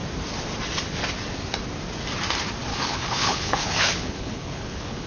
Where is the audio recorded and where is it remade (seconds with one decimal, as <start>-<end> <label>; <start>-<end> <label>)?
0.0-2.7 recorded; 2.7-5.1 remade